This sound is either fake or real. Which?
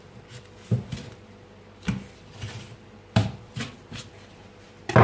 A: real